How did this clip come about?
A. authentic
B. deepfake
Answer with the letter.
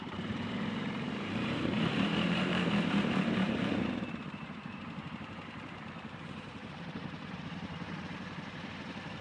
B